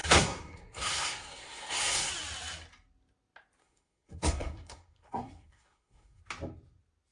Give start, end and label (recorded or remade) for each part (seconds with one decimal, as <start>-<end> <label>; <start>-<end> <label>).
0.0-2.1 remade; 2.1-3.6 recorded; 3.6-6.2 remade; 6.2-7.1 recorded